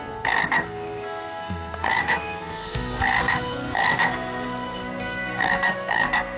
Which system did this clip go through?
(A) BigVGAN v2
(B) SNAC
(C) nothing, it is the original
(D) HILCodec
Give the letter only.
B